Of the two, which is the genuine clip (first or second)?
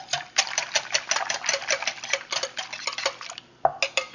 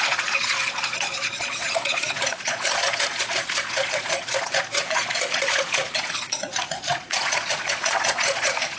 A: first